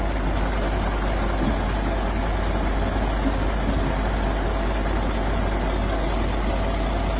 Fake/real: real